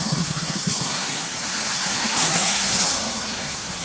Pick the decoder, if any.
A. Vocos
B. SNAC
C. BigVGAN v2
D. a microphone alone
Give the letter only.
B